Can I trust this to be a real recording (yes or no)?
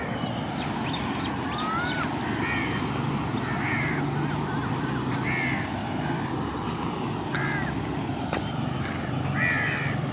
yes